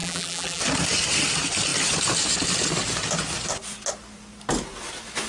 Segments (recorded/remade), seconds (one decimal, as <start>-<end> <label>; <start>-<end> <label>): 0.0-0.6 remade; 0.6-5.3 recorded